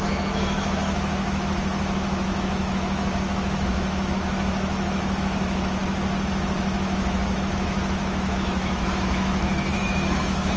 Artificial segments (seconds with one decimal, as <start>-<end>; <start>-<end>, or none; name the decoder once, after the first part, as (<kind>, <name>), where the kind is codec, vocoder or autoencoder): 0.0-5.8 (autoencoder, DAC-VAE); 6.3-10.6